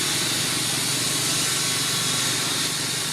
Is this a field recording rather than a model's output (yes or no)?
yes